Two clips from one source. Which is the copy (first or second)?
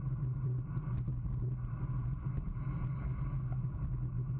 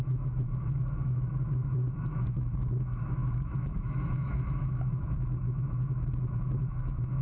second